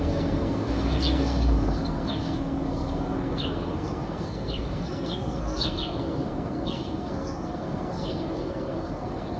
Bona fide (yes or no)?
no